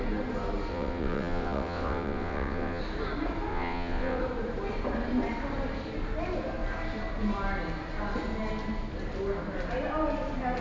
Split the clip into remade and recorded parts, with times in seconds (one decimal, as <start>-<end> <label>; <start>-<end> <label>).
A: 0.0-0.7 recorded; 0.7-2.8 remade; 2.8-3.5 recorded; 3.5-4.2 remade; 4.2-10.6 recorded